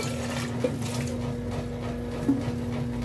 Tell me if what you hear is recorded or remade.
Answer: recorded